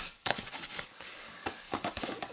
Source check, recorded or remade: remade